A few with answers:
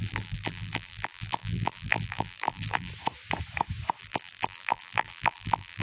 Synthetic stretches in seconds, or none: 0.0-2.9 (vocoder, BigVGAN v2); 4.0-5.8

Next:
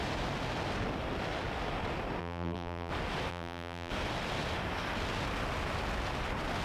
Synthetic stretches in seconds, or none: 2.2-2.9 (vocoder, BigVGAN v2); 3.3-3.9

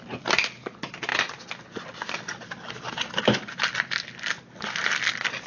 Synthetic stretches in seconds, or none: none

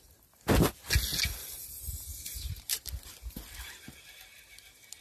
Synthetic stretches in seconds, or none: 2.1-2.9 (vocoder, BigVGAN v2)

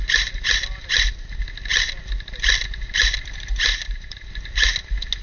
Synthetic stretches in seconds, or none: 3.7-4.3 (vocoder, BigVGAN v2)